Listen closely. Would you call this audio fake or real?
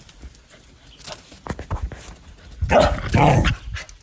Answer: real